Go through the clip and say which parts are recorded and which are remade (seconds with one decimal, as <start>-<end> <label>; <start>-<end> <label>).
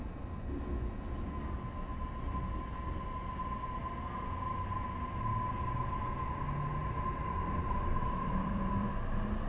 0.0-1.9 recorded; 1.9-2.5 remade; 2.5-6.8 recorded; 6.8-8.9 remade; 8.9-9.5 recorded